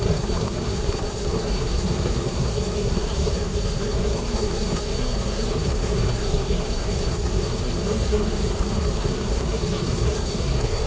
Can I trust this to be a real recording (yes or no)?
no